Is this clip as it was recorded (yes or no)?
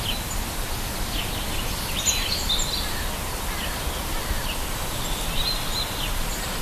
yes